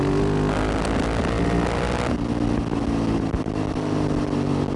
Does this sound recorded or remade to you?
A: recorded